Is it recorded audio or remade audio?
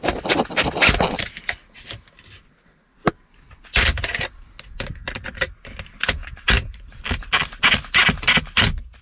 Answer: recorded